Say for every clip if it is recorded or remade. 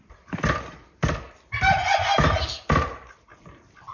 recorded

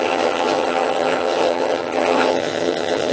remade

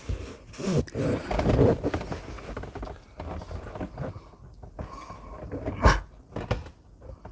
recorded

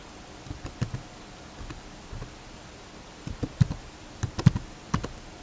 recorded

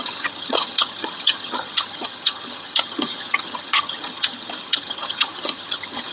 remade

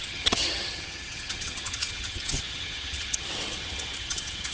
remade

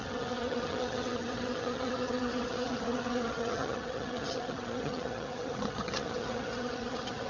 remade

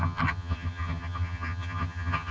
remade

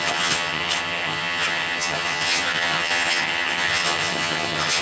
remade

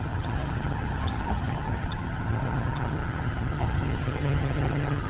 remade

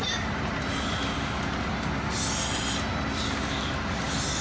recorded